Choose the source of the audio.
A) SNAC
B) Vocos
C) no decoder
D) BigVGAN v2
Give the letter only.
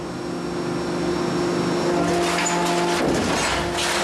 C